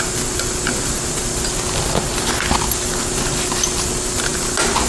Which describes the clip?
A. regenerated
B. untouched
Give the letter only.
B